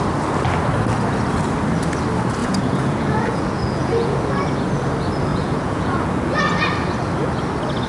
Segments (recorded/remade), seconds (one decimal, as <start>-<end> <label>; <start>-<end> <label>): 0.0-2.4 recorded; 2.4-4.2 remade; 4.2-5.3 recorded; 5.3-6.4 remade; 6.4-7.9 recorded